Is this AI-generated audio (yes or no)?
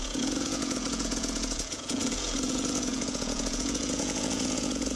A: yes